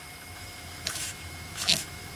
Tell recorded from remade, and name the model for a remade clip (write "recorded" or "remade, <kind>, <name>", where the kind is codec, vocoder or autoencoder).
remade, autoencoder, DAC-VAE